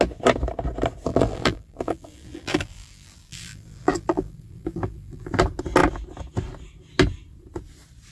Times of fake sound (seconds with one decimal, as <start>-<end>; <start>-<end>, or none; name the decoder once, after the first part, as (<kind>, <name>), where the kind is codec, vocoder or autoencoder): 1.1-5.3 (vocoder, BigVGAN v2)